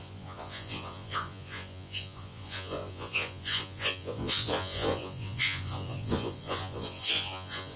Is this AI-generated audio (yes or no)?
yes